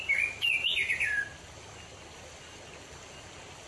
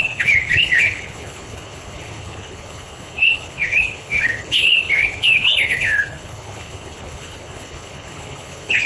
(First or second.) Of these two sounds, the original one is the first